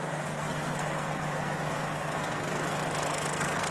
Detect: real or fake fake